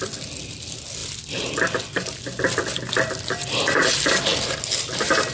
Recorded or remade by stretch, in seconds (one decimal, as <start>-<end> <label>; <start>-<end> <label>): 0.0-5.3 recorded